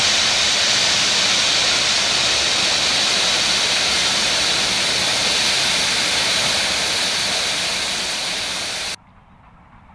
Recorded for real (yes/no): yes